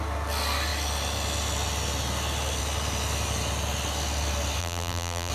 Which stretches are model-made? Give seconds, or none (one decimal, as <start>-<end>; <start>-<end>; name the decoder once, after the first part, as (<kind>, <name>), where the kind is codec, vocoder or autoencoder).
4.6-5.3 (vocoder, BigVGAN v2)